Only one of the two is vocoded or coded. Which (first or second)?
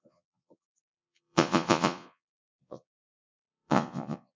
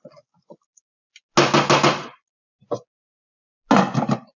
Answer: first